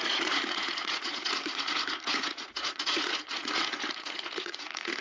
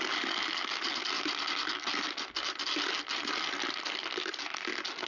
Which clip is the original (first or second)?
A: second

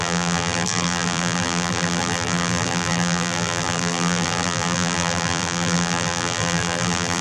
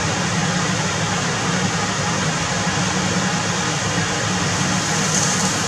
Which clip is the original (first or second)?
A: second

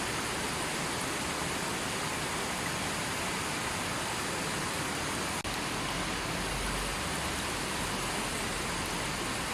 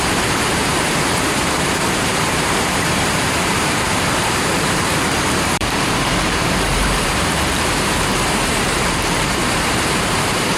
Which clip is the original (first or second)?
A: first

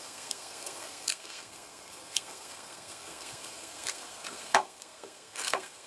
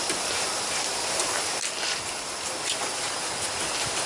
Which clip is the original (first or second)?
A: second